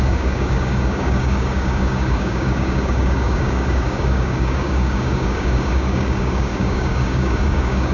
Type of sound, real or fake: fake